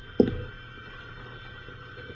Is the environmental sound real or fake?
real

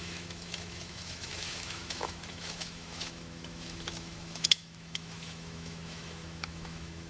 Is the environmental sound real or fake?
fake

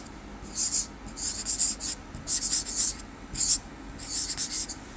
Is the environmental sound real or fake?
real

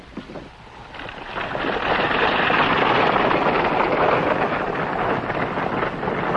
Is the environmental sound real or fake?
real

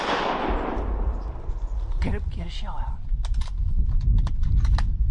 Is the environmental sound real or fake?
real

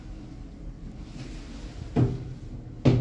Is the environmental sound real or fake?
real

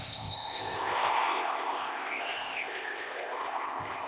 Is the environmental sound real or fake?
fake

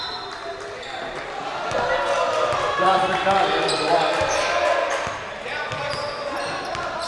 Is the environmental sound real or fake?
real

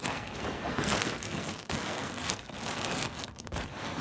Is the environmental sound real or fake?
fake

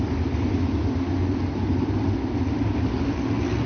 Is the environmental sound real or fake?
real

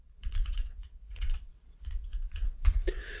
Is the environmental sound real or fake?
fake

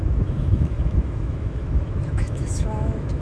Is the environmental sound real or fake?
fake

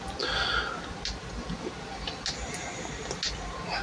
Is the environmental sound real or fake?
real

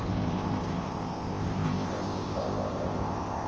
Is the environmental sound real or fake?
fake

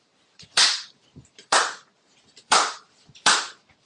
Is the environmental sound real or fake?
fake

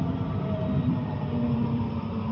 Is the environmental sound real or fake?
fake